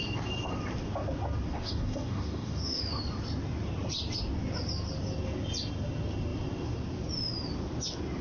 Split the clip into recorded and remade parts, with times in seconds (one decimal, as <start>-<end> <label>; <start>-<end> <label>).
0.0-1.5 recorded; 1.5-2.8 remade; 2.8-8.2 recorded